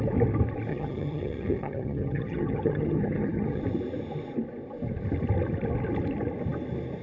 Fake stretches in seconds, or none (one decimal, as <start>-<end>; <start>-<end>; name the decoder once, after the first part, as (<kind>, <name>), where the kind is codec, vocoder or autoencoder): 0.7-3.6 (vocoder, HiFi-GAN)